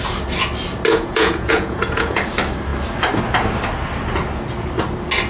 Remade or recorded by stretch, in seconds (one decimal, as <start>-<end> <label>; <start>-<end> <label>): 0.0-0.9 recorded; 0.9-2.2 remade; 2.2-5.3 recorded